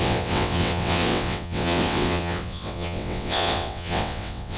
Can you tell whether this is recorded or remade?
remade